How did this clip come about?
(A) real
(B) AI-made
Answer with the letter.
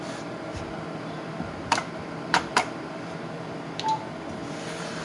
B